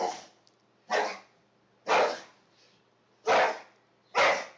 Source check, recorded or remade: recorded